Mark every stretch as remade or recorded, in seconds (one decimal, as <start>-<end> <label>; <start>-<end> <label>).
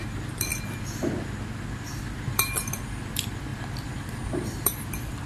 0.0-0.5 remade; 0.5-1.9 recorded; 1.9-5.3 remade